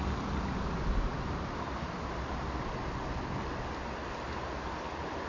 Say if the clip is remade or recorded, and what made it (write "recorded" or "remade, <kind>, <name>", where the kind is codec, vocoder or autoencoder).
recorded